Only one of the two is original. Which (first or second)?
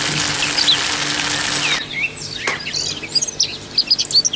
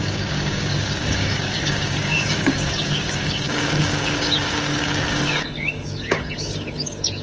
first